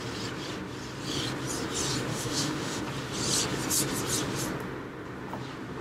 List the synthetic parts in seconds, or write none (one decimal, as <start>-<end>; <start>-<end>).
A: 2.1-2.8